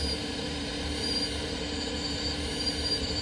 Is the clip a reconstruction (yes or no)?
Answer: no